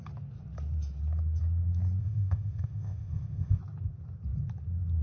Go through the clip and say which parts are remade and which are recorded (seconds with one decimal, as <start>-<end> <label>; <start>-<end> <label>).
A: 0.0-2.0 recorded; 2.0-3.6 remade; 3.6-5.0 recorded